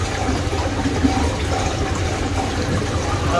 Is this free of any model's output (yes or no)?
yes